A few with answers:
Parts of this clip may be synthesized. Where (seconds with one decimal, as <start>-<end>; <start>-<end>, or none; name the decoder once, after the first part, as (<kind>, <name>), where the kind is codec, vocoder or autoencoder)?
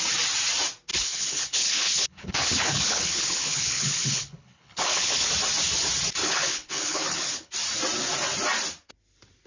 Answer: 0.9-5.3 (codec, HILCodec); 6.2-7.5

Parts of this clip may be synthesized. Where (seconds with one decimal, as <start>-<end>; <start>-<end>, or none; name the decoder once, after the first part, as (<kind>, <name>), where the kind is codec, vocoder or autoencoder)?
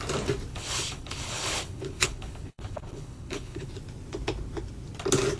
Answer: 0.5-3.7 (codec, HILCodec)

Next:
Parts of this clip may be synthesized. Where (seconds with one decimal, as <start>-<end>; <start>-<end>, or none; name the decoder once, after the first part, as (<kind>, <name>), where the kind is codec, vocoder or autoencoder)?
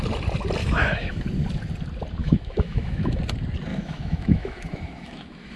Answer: 0.6-1.2 (autoencoder, DAC-VAE); 2.2-3.2; 3.7-5.6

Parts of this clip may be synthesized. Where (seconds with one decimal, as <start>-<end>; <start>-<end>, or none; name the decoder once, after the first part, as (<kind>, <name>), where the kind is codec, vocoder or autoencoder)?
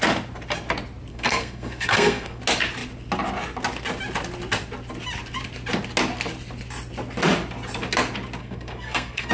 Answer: 1.1-2.4 (codec, SNAC); 8.4-9.3